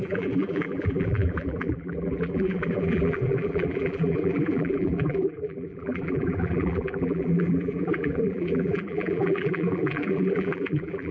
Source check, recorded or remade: remade